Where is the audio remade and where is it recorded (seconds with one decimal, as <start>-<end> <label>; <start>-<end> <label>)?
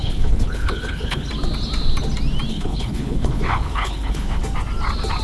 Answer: 0.0-1.3 remade; 1.3-2.5 recorded; 2.5-4.4 remade; 4.4-5.2 recorded